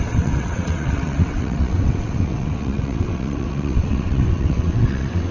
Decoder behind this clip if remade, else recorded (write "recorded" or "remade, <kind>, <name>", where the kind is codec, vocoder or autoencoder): remade, vocoder, WaveNeXt